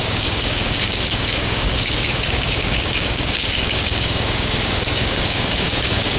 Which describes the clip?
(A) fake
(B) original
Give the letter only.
A